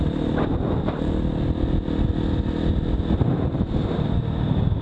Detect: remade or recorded recorded